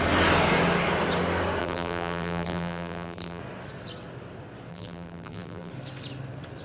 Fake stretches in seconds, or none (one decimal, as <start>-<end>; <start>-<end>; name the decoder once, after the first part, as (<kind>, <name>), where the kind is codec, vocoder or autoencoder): 1.6-3.4 (vocoder, BigVGAN v2); 4.7-5.7